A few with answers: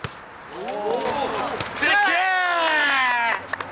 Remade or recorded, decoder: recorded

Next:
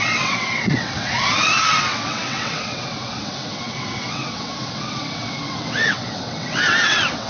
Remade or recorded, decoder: remade, vocoder, WaveNeXt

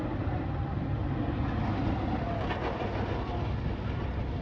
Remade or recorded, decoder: recorded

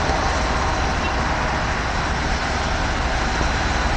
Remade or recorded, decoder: recorded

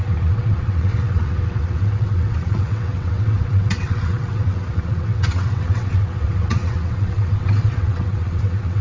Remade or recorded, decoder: remade, vocoder, WaveNeXt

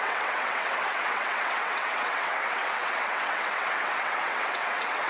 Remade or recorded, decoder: remade, vocoder, WaveNeXt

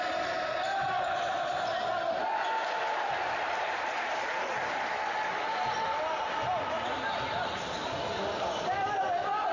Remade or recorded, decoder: recorded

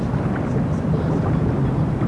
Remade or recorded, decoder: recorded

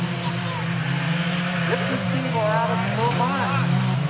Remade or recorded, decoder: recorded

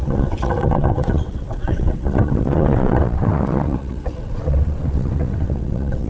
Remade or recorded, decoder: remade, vocoder, WaveNeXt